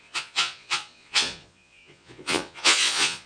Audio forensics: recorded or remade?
remade